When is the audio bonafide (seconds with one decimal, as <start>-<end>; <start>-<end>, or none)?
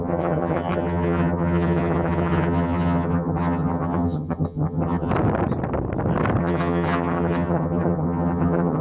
5.1-6.4